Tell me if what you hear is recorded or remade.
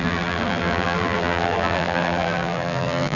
remade